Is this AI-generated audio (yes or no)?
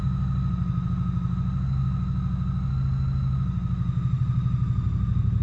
no